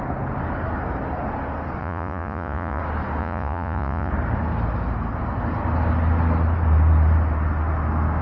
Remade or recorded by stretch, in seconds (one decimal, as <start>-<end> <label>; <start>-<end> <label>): 0.0-1.8 recorded; 1.8-2.8 remade; 2.8-3.2 recorded; 3.2-4.1 remade; 4.1-8.2 recorded